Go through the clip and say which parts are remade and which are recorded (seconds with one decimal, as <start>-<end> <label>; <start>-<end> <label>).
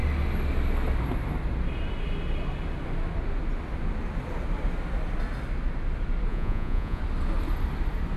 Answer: 0.0-6.3 recorded; 6.3-7.0 remade; 7.0-8.2 recorded